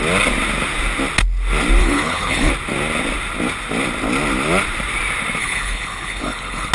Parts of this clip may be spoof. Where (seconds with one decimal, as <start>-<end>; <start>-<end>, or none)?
1.8-2.5; 5.4-6.7